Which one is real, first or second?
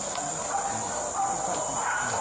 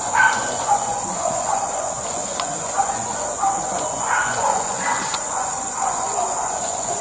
first